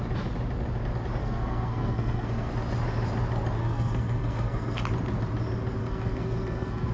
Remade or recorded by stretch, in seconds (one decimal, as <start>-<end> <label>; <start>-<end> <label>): 0.0-1.2 recorded; 1.2-2.5 remade; 2.5-3.6 recorded; 3.6-4.8 remade; 4.8-5.8 recorded; 5.8-6.9 remade